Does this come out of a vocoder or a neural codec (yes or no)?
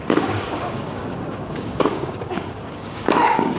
yes